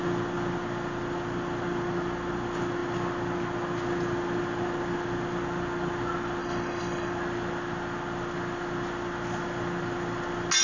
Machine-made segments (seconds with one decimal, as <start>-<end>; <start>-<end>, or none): 6.4-7.1